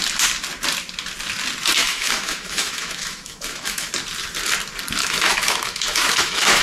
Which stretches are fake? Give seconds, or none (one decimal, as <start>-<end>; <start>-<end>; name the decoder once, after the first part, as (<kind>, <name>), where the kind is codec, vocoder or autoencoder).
1.8-3.9 (autoencoder, DAC-VAE); 5.0-6.6